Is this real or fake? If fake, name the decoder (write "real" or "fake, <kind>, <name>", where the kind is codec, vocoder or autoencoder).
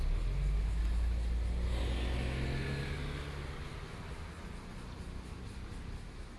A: real